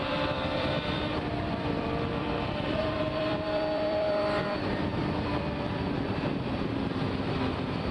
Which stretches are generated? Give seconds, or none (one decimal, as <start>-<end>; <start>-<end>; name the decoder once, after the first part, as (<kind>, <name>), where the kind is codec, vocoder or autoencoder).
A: 0.0-7.9 (vocoder, BigVGAN v2)